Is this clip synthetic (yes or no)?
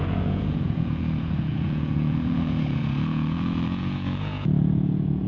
yes